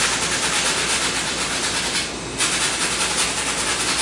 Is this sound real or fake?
real